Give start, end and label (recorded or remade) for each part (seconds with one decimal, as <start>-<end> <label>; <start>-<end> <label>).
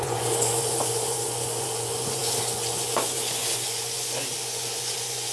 0.0-5.3 remade